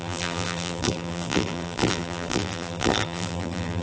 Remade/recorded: remade